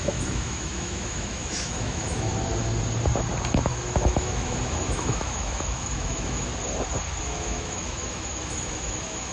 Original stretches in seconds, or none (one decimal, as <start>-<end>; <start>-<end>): 2.3-3.7; 6.5-7.2